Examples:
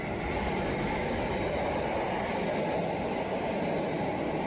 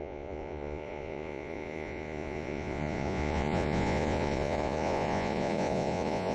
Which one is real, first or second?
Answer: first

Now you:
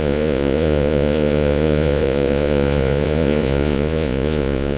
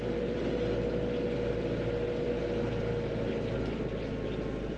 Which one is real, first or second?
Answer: second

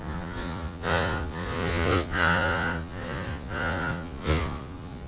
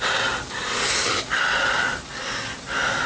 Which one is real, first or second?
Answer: second